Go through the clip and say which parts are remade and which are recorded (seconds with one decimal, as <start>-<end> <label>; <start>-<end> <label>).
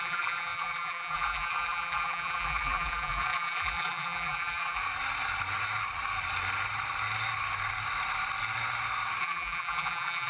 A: 0.0-4.8 remade; 4.8-9.2 recorded; 9.2-10.3 remade